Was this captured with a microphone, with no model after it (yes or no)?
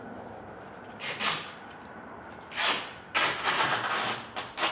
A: yes